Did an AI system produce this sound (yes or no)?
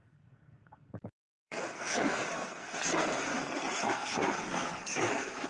yes